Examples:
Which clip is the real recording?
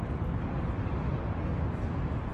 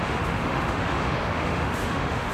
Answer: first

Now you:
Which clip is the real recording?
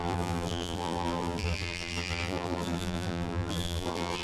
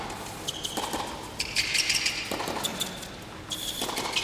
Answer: second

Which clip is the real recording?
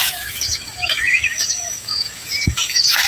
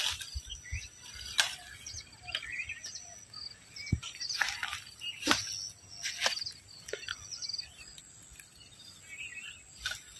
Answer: second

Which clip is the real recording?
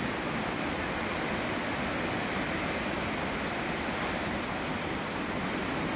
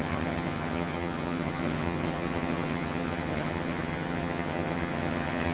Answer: first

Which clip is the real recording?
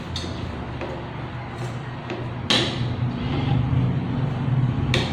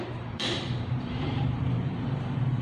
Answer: first